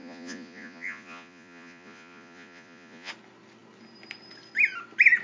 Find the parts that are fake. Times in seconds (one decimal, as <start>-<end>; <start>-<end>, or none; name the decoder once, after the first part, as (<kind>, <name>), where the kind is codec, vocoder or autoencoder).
0.0-3.1 (vocoder, Vocos)